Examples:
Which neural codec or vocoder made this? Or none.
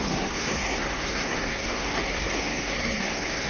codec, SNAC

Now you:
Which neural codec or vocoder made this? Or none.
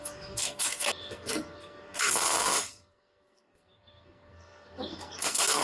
codec, SNAC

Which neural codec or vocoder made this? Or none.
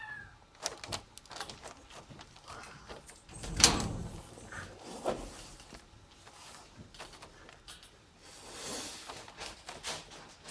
none